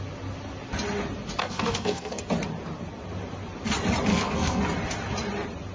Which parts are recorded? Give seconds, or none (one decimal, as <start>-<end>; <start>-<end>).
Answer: 0.0-1.4; 2.2-4.1; 4.6-5.7